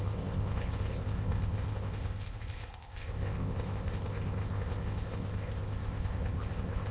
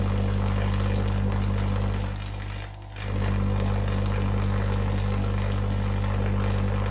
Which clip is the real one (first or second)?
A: second